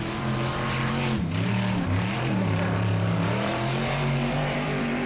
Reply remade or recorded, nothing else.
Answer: remade